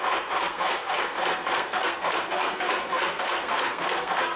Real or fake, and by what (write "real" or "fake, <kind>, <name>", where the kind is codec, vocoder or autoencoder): fake, codec, SNAC